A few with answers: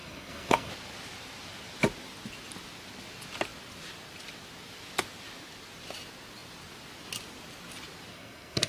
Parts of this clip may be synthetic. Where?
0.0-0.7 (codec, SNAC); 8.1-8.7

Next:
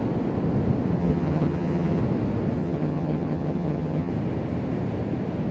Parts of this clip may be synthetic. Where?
1.0-2.0 (vocoder, HiFi-GAN); 2.6-4.1

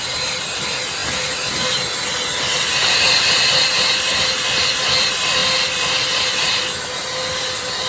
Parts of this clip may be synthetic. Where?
none

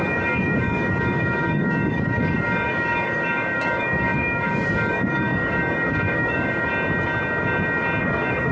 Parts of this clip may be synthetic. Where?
0.0-6.7 (codec, DAC); 8.0-8.5

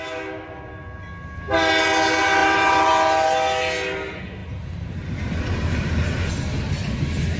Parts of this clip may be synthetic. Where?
2.4-2.9 (vocoder, BigVGAN v2); 4.4-6.3

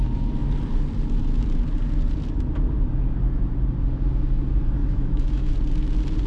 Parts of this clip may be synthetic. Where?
4.8-5.5 (autoencoder, DAC-VAE)

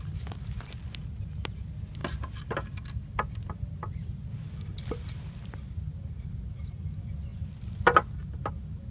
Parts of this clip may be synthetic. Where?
none